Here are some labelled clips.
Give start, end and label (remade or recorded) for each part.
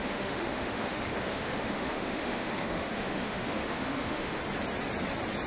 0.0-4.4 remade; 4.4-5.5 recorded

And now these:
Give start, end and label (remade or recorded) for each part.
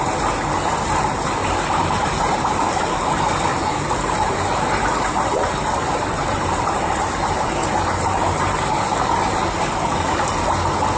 0.0-1.4 recorded; 1.4-2.8 remade; 2.8-3.5 recorded; 3.5-7.1 remade; 7.1-11.0 recorded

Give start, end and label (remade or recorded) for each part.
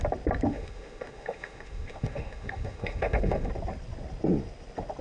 0.0-0.5 recorded; 0.5-3.5 remade; 3.5-5.0 recorded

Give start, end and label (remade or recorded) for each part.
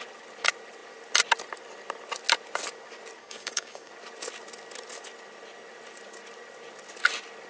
0.0-3.2 recorded; 3.2-3.9 remade; 3.9-7.5 recorded